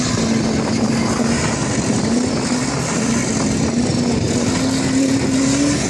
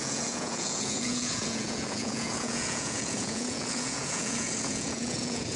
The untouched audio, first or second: first